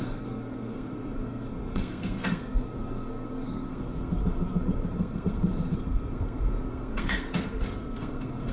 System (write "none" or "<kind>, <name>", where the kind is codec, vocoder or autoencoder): codec, SNAC